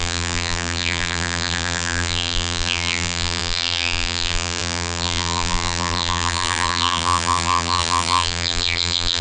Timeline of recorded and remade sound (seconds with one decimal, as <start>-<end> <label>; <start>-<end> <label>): 0.0-9.2 remade